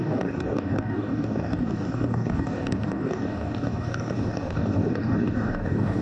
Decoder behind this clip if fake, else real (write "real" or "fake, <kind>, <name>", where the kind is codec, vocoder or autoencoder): fake, codec, DAC